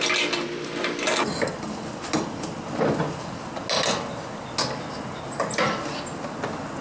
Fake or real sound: real